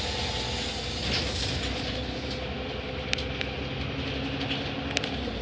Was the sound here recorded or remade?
recorded